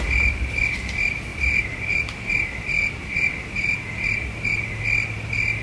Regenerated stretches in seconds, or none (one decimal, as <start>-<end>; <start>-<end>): none